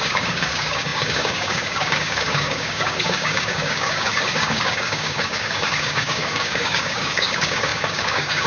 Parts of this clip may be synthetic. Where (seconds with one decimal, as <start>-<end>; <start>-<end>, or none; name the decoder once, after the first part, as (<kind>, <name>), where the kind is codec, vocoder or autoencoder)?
0.0-8.5 (codec, DAC)